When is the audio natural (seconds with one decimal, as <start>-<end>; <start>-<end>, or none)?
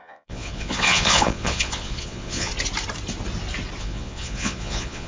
2.5-3.8